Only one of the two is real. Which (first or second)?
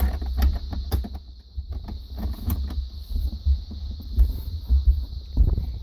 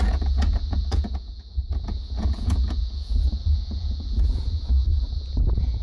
first